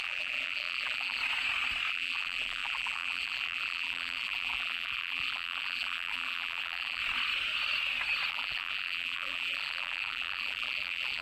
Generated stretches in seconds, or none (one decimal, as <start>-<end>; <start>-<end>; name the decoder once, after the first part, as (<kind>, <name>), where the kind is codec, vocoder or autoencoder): 0.0-1.2 (vocoder, BigVGAN v2); 1.9-7.0; 8.3-11.2